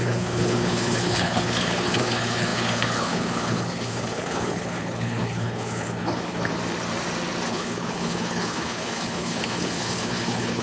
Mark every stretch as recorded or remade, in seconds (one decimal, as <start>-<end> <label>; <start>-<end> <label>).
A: 0.0-6.5 remade; 6.5-7.5 recorded; 7.5-10.6 remade